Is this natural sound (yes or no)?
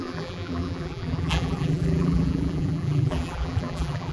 no